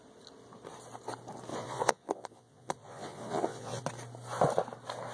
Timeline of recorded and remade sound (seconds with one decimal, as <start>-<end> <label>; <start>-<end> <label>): 0.0-1.5 recorded; 1.5-3.8 remade; 3.8-5.1 recorded